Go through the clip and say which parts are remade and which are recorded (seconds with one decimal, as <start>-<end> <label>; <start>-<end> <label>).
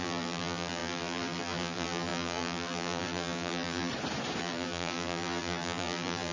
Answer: 0.0-3.9 remade; 3.9-4.4 recorded; 4.4-6.3 remade